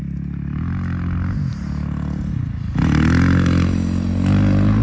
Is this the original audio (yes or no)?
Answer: yes